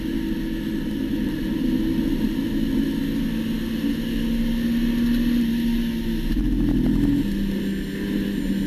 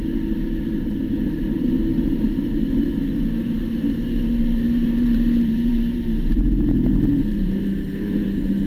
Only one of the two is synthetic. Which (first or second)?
second